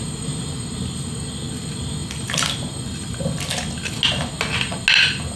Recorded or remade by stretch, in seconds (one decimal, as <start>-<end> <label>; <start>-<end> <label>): 0.0-5.4 recorded